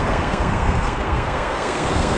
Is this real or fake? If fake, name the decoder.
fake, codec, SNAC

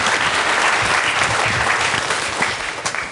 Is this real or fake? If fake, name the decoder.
real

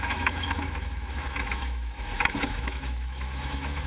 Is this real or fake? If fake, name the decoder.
fake, autoencoder, DAC-VAE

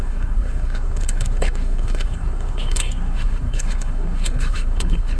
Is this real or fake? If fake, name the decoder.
fake, codec, SNAC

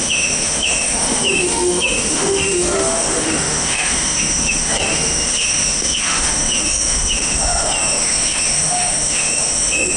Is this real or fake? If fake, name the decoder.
fake, autoencoder, DAC-VAE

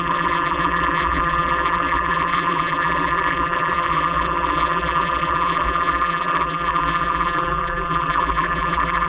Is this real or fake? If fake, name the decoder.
fake, vocoder, BigVGAN v2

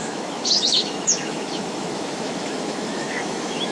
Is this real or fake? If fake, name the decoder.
fake, autoencoder, DAC-VAE